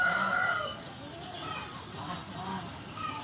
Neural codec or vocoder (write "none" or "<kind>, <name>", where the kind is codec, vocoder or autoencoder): none